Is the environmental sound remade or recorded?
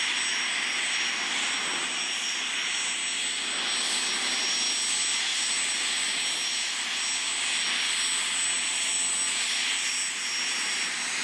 recorded